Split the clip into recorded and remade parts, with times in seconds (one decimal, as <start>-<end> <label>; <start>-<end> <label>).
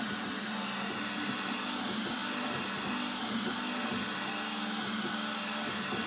0.0-6.1 recorded